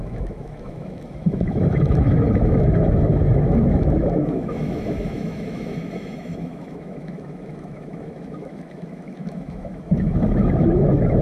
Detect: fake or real fake